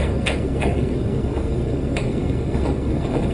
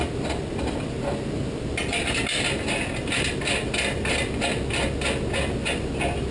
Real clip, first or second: second